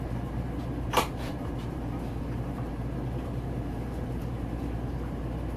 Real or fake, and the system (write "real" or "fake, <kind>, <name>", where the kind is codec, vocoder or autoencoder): fake, vocoder, BigVGAN v2